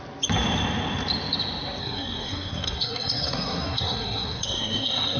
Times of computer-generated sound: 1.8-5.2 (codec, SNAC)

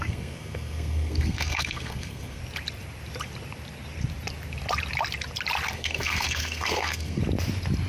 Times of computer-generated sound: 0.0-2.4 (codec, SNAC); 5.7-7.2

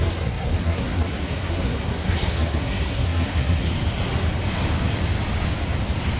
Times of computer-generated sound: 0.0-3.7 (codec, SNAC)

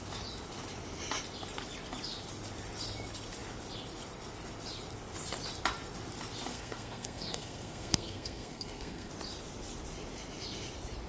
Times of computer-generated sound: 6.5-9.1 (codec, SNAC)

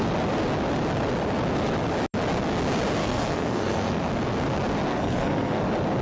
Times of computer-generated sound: 3.0-4.1 (codec, SNAC); 4.9-5.6

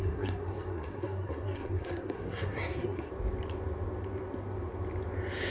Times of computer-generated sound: 0.0-3.1 (codec, SNAC)

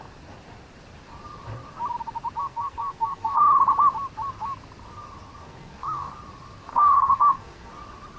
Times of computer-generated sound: 2.4-3.4 (codec, SNAC); 5.4-6.1; 6.7-7.7